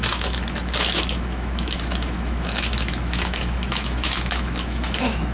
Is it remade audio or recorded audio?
remade